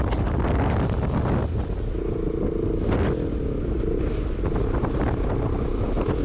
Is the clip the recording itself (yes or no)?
yes